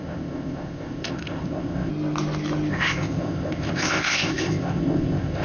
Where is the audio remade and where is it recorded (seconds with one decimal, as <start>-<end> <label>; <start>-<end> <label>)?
0.0-1.9 remade; 1.9-2.7 recorded; 2.7-5.4 remade